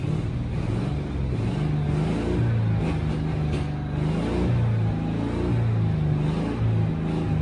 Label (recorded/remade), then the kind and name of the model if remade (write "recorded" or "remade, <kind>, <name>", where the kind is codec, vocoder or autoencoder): recorded